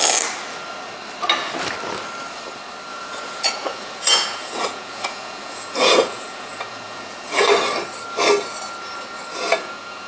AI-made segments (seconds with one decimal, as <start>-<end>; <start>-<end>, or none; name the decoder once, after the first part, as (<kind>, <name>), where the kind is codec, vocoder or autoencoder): 2.9-7.5 (vocoder, Vocos); 9.3-10.1